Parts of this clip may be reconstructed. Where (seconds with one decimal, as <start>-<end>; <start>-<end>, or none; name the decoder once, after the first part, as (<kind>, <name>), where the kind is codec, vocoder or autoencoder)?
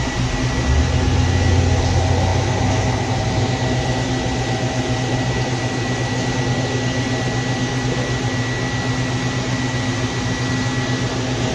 none